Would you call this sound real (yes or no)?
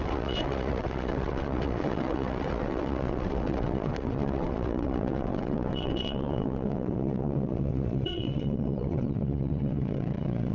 no